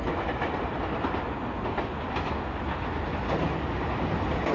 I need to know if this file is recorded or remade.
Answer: recorded